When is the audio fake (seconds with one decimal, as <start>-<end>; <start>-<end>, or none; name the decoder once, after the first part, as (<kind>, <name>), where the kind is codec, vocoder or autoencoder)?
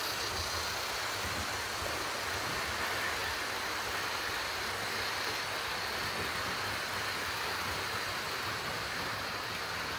7.5-9.5 (vocoder, BigVGAN v2)